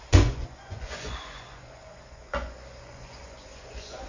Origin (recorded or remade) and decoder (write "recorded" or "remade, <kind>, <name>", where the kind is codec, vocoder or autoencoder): remade, vocoder, Vocos